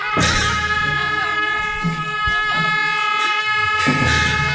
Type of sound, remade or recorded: recorded